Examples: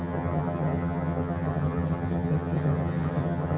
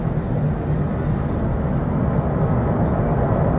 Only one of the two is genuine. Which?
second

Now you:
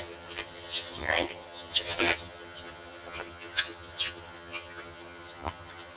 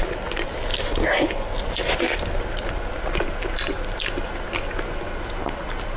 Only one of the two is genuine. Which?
second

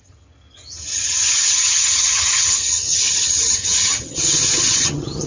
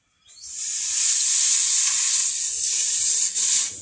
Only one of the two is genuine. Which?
second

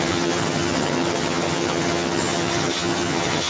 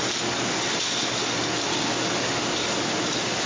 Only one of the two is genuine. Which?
second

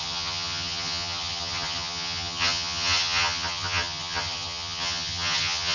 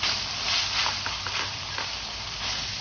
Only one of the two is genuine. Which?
second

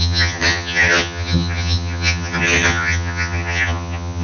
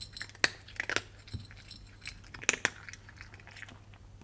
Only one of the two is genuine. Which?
second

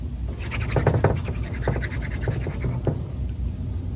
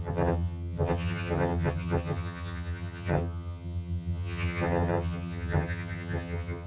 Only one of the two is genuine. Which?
first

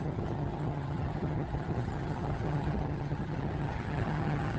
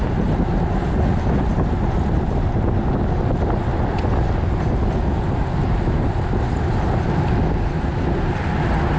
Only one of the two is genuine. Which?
second